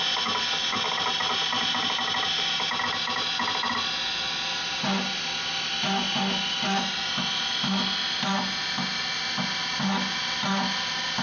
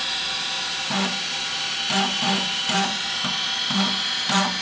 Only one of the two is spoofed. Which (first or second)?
second